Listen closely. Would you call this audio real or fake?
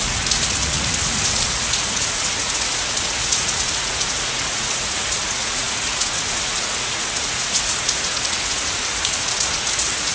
fake